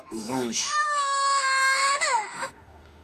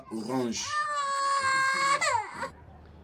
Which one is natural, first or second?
second